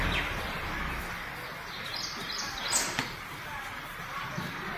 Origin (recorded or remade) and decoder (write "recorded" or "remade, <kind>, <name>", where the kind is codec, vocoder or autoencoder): recorded